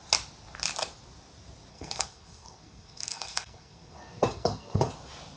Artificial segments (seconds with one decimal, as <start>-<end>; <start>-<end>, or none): 1.7-4.9